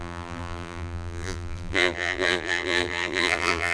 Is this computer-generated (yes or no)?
yes